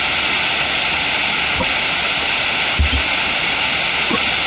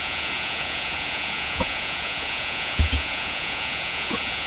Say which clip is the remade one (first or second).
second